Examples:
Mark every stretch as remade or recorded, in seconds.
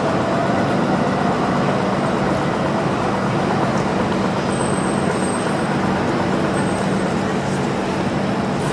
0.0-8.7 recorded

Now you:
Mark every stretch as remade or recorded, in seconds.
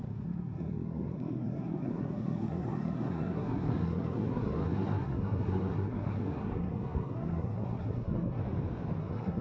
0.0-8.4 remade; 8.4-9.0 recorded; 9.0-9.4 remade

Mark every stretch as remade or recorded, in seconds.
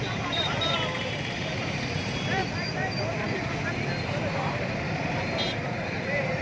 0.0-2.4 remade; 2.4-4.0 recorded; 4.0-6.4 remade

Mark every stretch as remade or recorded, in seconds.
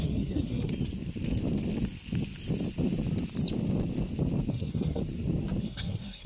0.0-0.7 remade; 0.7-4.5 recorded; 4.5-5.0 remade; 5.0-5.6 recorded; 5.6-6.3 remade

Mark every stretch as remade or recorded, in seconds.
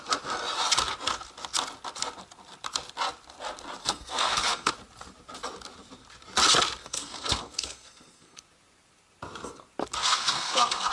0.0-3.8 recorded; 3.8-4.7 remade; 4.7-6.8 recorded; 6.8-8.4 remade; 8.4-10.0 recorded; 10.0-10.9 remade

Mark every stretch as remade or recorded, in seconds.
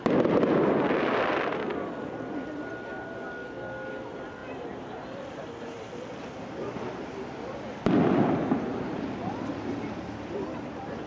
0.0-4.4 recorded; 4.4-5.8 remade; 5.8-8.7 recorded; 8.7-9.5 remade; 9.5-11.1 recorded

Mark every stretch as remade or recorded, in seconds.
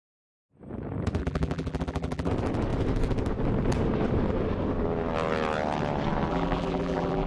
0.0-1.2 recorded; 1.2-2.3 remade; 2.3-6.3 recorded; 6.3-7.3 remade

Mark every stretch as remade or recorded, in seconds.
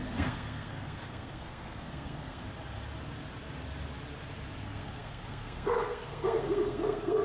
0.0-2.4 remade; 2.4-4.6 recorded; 4.6-7.2 remade